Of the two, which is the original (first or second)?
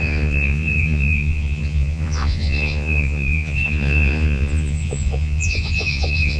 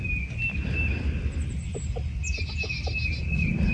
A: second